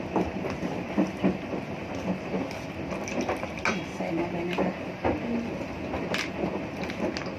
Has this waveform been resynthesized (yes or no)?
no